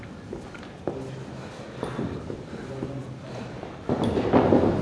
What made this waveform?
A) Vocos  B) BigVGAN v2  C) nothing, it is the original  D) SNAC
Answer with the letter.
C